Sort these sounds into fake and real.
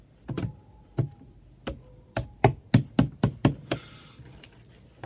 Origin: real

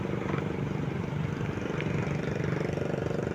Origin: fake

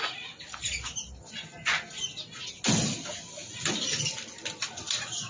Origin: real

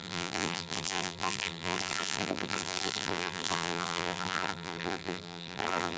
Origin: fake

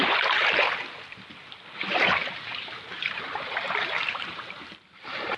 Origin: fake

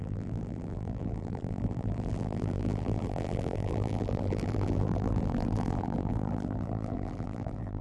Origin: fake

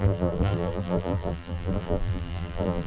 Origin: fake